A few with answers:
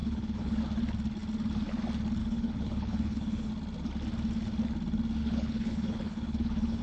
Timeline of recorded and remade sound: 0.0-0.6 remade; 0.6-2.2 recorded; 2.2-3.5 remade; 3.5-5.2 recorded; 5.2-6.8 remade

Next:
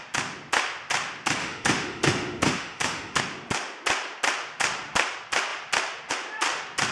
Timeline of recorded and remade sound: 0.0-1.4 recorded; 1.4-3.2 remade; 3.2-6.9 recorded

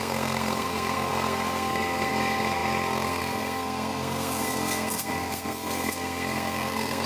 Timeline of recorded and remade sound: 0.0-7.1 remade

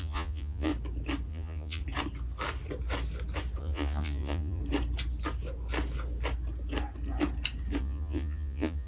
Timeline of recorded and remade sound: 0.0-0.7 remade; 0.7-1.3 recorded; 1.3-1.8 remade; 1.8-3.6 recorded; 3.6-4.6 remade; 4.6-7.8 recorded; 7.8-8.9 remade

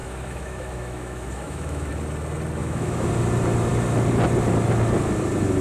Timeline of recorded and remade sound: 0.0-1.9 remade; 1.9-2.6 recorded; 2.6-3.1 remade; 3.1-5.6 recorded

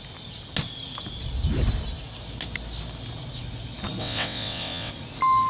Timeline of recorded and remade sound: 0.0-4.0 recorded; 4.0-4.9 remade; 4.9-5.5 recorded

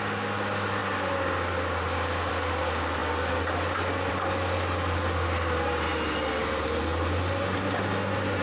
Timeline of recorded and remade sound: 0.0-8.4 recorded

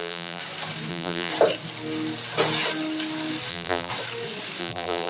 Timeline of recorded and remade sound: 0.0-0.4 remade; 0.4-0.9 recorded; 0.9-1.3 remade; 1.3-3.5 recorded; 3.5-3.9 remade; 3.9-4.6 recorded; 4.6-5.1 remade